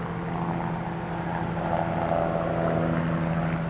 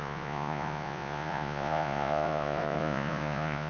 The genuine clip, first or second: first